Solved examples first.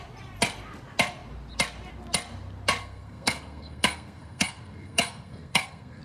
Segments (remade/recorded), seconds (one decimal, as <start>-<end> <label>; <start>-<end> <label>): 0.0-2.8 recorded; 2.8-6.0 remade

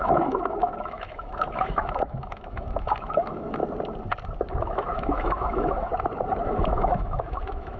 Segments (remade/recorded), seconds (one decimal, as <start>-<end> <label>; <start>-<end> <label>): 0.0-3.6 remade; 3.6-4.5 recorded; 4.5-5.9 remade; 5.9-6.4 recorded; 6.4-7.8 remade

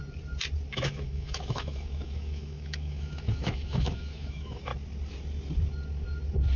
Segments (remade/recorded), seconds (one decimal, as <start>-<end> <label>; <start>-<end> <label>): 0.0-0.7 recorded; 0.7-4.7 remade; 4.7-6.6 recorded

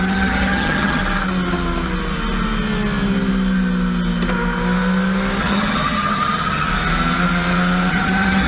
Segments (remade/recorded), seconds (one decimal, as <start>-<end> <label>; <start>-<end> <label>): 0.0-1.0 remade; 1.0-5.4 recorded; 5.4-6.7 remade; 6.7-7.9 recorded; 7.9-8.5 remade

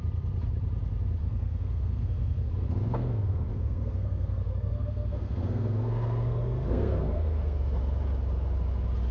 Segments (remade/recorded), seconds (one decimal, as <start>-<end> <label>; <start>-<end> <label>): 0.0-1.2 recorded; 1.2-2.5 remade; 2.5-3.0 recorded; 3.0-7.8 remade; 7.8-9.1 recorded

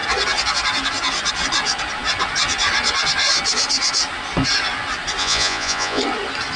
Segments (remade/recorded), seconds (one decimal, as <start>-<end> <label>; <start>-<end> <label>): 0.0-5.2 recorded; 5.2-6.0 remade; 6.0-6.6 recorded